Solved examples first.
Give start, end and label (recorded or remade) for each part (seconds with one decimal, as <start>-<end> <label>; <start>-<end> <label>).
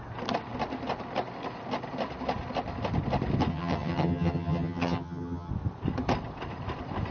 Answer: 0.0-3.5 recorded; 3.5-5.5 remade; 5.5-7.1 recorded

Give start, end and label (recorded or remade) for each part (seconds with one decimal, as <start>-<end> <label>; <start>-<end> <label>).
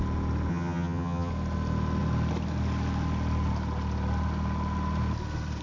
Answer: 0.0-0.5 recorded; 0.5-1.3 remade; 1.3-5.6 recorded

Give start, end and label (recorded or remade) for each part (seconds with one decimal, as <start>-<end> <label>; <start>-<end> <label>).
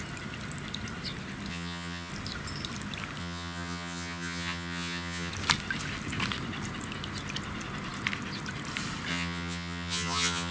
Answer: 0.0-1.5 recorded; 1.5-2.1 remade; 2.1-3.2 recorded; 3.2-5.3 remade; 5.3-9.1 recorded; 9.1-10.5 remade